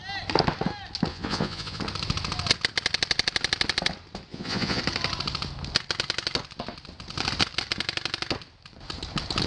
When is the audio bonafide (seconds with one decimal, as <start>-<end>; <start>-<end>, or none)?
0.0-1.1; 1.8-4.3; 4.8-9.5

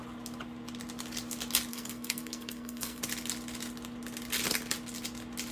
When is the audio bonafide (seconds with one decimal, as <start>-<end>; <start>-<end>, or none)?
0.0-1.7; 3.0-5.5

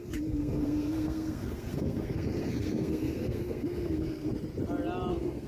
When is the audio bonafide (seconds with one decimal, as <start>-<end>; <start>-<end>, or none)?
4.3-5.1

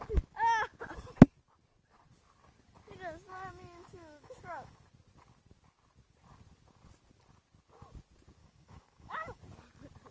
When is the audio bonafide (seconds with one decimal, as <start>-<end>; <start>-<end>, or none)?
0.0-3.3; 4.8-8.4; 9.4-10.1

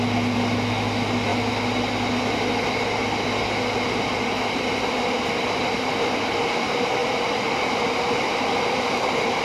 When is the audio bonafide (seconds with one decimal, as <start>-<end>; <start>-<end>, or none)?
0.0-9.4

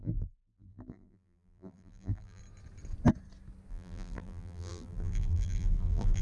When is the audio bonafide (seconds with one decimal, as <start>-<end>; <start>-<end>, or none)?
2.4-3.7

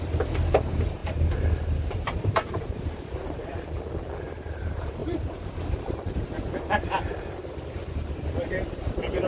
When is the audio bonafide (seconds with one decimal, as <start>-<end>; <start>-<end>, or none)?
1.0-1.9; 3.5-4.4